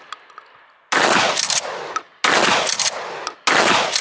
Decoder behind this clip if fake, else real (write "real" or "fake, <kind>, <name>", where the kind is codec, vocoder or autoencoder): real